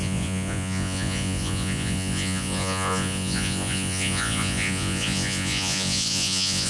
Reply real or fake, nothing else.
fake